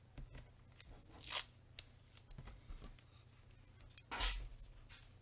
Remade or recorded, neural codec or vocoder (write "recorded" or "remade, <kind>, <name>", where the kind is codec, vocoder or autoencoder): recorded